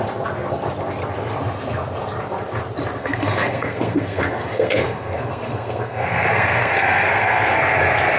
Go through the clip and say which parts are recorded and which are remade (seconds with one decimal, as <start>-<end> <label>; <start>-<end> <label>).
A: 0.0-3.0 recorded; 3.0-7.6 remade; 7.6-8.2 recorded